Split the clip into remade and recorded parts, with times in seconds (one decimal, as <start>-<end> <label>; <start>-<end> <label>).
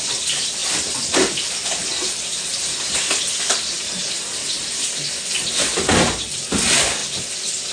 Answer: 0.0-4.4 recorded; 4.4-5.1 remade; 5.1-7.7 recorded